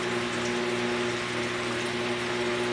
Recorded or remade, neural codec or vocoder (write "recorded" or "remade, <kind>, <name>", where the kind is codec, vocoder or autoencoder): recorded